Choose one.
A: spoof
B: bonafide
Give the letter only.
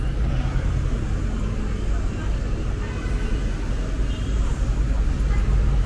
B